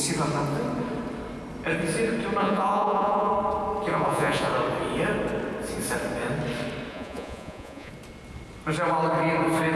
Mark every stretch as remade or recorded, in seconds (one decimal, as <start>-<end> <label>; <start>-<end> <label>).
0.0-2.4 recorded; 2.4-3.3 remade; 3.3-3.9 recorded; 3.9-4.5 remade; 4.5-6.9 recorded; 6.9-7.9 remade; 7.9-9.8 recorded